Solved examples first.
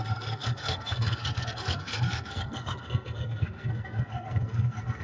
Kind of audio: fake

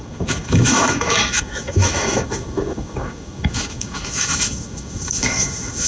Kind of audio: fake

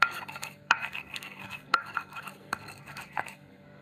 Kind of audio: fake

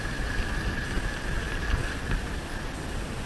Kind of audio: real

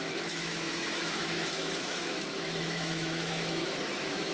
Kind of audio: fake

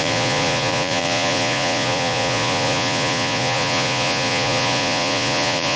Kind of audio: fake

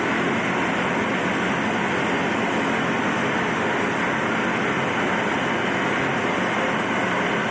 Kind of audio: real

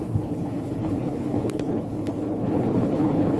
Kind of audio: fake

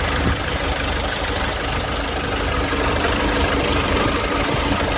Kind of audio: fake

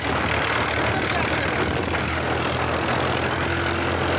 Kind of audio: real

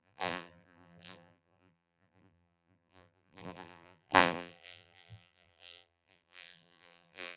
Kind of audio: fake